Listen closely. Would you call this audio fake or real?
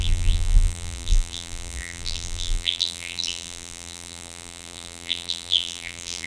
fake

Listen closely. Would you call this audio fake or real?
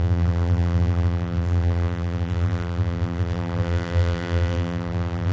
fake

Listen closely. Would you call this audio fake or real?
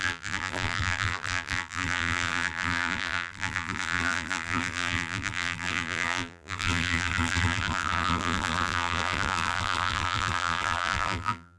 fake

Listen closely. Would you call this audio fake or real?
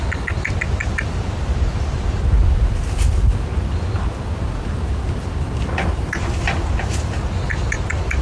real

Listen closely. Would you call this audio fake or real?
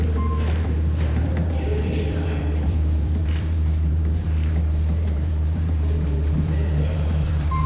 fake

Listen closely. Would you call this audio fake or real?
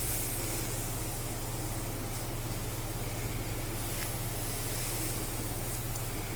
real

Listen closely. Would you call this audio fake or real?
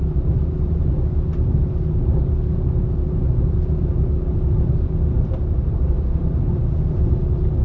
fake